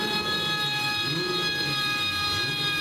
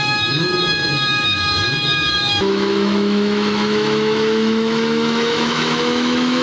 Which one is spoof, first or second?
second